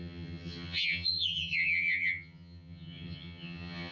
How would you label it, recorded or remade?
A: remade